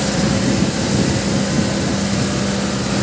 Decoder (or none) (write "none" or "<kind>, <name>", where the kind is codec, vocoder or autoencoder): none